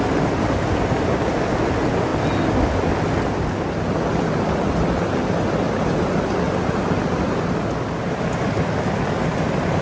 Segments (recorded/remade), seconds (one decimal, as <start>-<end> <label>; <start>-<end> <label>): 0.0-9.8 recorded